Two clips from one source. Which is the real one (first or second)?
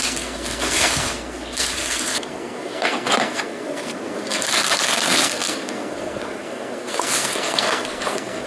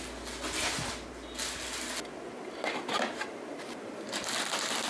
second